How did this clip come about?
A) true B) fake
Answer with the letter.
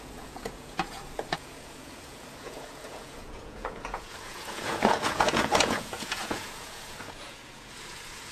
B